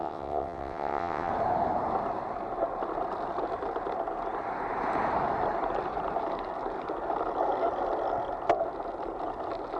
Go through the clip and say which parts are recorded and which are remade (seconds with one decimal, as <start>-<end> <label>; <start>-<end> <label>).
0.0-1.3 remade; 1.3-9.8 recorded